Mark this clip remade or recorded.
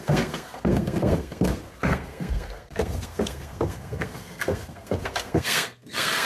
remade